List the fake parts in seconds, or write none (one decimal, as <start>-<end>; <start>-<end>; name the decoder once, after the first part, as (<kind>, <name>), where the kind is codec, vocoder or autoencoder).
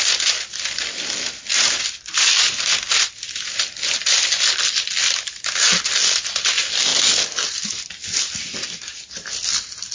none